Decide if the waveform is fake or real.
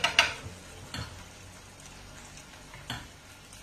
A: real